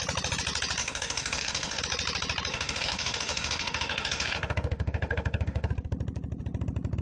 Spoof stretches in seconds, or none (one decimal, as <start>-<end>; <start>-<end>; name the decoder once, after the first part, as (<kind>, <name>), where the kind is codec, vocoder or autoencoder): 0.8-1.8 (autoencoder, DAC-VAE); 2.5-5.7